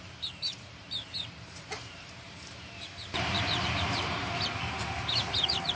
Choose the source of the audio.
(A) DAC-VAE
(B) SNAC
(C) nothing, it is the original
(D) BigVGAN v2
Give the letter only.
D